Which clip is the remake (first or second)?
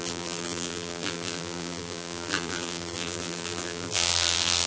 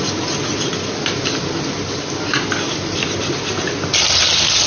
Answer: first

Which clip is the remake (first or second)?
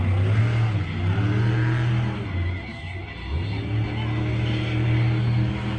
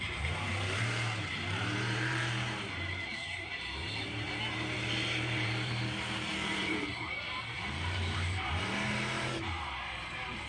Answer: second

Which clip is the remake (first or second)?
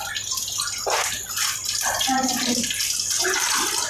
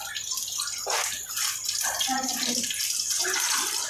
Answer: second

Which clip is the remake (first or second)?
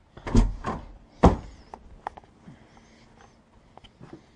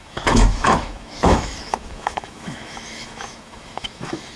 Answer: second